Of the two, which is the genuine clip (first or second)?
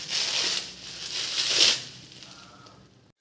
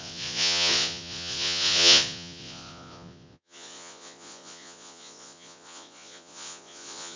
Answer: first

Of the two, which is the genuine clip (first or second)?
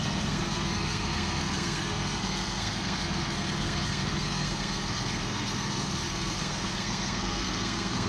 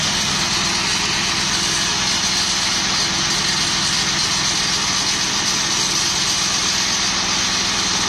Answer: second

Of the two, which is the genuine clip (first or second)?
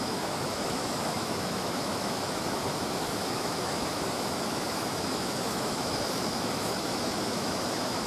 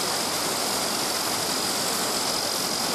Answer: second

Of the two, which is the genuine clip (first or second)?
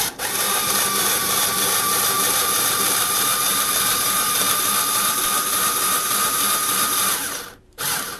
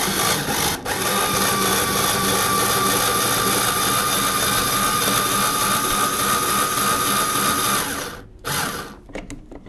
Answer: second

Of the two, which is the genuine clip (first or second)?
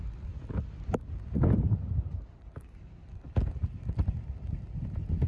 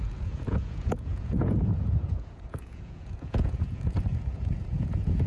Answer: first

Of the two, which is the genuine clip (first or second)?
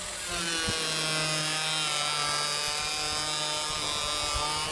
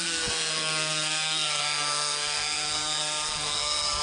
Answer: first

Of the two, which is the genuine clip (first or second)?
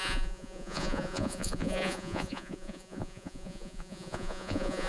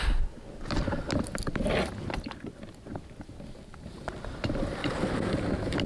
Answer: second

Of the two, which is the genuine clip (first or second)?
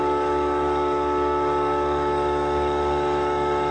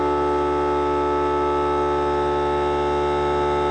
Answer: second